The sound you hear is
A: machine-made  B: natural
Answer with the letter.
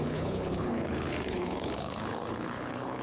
A